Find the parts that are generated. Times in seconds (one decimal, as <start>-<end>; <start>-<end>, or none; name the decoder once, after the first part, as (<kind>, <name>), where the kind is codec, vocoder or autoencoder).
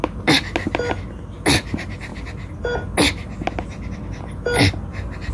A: none